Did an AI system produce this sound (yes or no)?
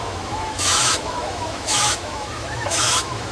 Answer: yes